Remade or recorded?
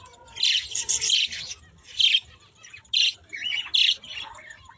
recorded